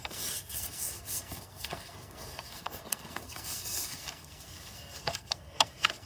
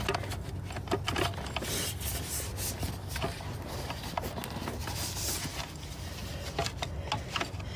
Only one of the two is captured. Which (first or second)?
second